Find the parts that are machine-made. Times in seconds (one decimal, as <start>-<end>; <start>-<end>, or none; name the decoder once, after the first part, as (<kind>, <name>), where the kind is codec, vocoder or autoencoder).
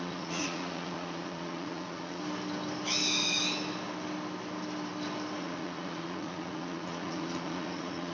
0.0-2.2 (vocoder, Vocos); 5.4-8.1